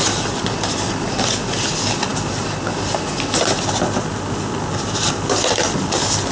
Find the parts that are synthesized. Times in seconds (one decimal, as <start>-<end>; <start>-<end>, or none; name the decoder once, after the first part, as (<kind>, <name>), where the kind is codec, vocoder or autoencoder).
none